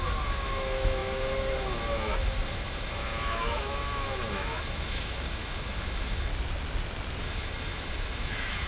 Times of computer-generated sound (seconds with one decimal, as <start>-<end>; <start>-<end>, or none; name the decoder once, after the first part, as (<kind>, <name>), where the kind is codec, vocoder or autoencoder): 0.0-6.3 (autoencoder, DAC-VAE); 7.2-8.7